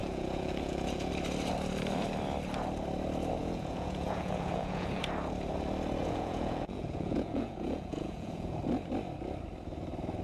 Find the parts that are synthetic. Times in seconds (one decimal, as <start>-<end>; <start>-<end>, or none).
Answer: 0.0-1.1; 3.4-5.0; 6.0-8.6